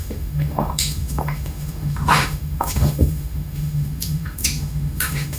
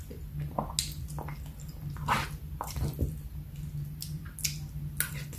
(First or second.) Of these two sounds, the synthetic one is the first